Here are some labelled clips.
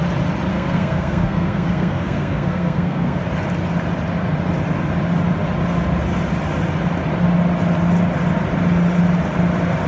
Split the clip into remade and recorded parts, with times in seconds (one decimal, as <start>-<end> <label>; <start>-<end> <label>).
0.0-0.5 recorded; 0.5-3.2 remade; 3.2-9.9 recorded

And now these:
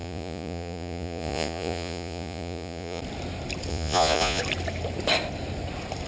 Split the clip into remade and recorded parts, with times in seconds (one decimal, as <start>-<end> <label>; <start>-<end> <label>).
0.0-3.0 remade; 3.0-3.7 recorded; 3.7-4.4 remade; 4.4-6.1 recorded

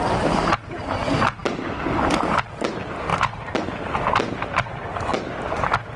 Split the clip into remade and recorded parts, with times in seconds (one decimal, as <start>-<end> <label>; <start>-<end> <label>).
0.0-6.0 recorded